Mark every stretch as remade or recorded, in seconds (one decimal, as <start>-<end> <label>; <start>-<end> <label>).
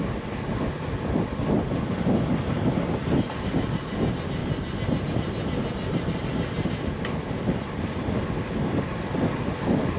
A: 0.0-10.0 recorded